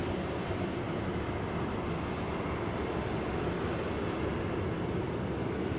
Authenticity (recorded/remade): recorded